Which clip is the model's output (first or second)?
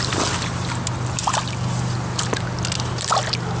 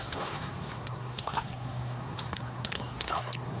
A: second